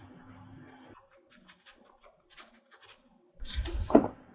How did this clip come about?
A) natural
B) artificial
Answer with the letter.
B